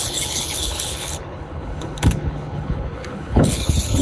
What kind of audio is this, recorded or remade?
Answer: remade